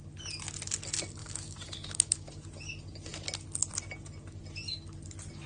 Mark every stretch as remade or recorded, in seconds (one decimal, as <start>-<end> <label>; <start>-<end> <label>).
0.0-1.2 recorded; 1.2-2.3 remade; 2.3-5.5 recorded